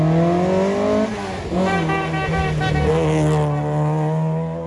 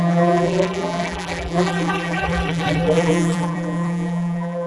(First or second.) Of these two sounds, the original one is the first